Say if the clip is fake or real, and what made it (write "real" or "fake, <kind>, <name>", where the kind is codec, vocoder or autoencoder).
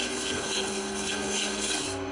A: fake, codec, SNAC